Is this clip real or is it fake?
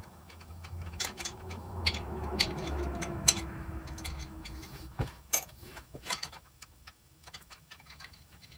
fake